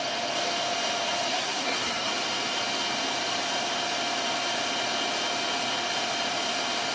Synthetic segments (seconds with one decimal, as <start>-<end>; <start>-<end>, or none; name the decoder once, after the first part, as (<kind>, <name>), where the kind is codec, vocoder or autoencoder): 1.3-2.1 (codec, SNAC)